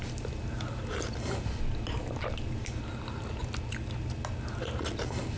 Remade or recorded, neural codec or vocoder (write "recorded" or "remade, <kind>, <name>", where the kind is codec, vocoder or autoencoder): recorded